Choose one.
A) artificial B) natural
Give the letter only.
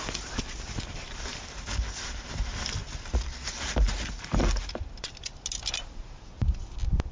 B